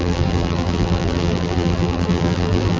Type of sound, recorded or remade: remade